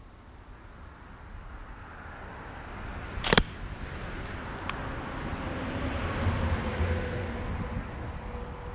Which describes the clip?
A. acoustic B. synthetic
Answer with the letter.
A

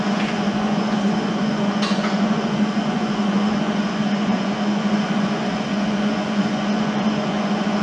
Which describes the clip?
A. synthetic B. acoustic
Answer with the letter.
A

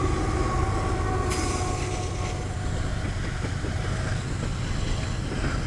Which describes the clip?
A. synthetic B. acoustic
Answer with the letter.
B